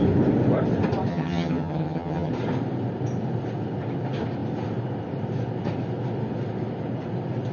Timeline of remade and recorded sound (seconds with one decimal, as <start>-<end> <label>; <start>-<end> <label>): 0.0-1.1 recorded; 1.1-2.3 remade; 2.3-7.5 recorded